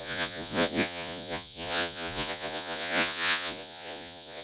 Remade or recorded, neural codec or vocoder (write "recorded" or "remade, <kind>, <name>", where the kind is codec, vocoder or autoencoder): remade, vocoder, Vocos